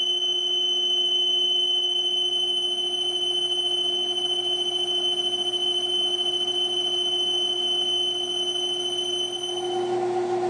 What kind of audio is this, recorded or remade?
recorded